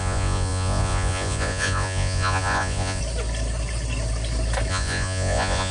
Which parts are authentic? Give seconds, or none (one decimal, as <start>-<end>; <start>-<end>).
3.0-4.7